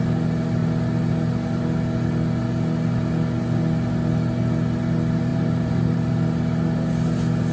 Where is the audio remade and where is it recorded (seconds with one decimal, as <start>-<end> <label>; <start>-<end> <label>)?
0.0-5.3 recorded; 5.3-6.1 remade; 6.1-7.5 recorded